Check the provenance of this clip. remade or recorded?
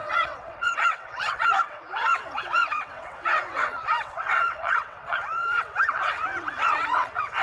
remade